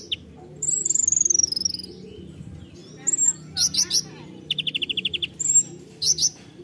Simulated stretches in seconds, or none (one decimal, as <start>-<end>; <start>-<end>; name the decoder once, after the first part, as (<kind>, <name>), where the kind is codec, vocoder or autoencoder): none